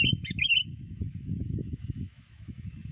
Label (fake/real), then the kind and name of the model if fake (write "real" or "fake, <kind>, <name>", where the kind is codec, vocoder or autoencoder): fake, autoencoder, DAC-VAE